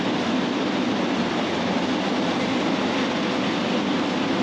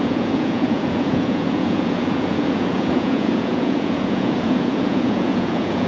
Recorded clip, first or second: first